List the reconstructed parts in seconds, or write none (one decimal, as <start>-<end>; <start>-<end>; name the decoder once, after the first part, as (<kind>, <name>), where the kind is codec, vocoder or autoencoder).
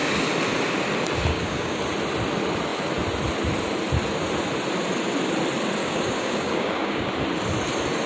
1.3-1.8 (codec, DAC); 5.8-7.1